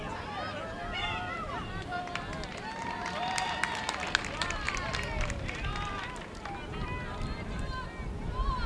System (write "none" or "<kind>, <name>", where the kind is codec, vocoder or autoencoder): none